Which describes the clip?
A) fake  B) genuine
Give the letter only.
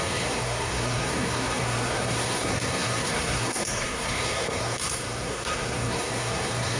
A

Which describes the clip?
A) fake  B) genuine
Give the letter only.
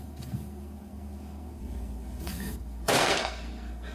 A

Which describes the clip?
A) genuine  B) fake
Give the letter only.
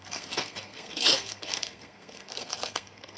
B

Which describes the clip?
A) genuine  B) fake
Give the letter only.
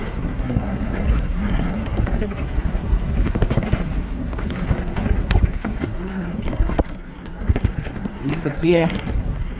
B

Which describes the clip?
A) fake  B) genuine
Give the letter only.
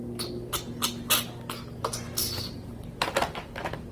B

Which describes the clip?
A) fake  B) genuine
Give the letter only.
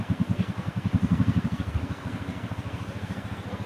A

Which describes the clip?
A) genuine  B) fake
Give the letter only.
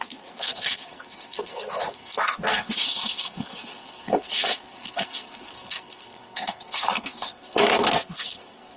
B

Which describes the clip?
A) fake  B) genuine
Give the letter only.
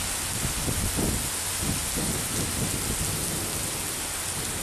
B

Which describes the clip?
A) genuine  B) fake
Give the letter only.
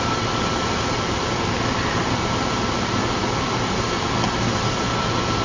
A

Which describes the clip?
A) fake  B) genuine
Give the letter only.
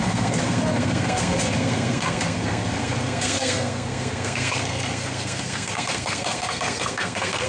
A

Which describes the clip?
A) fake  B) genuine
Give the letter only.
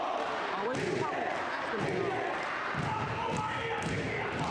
B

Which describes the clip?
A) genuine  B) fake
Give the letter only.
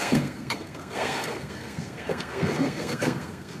B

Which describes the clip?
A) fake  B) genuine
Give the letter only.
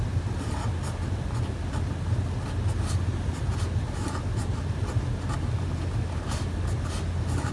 B